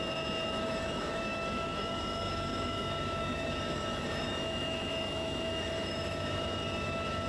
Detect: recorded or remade remade